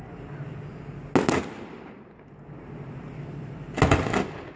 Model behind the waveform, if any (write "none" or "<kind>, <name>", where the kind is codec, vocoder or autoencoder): none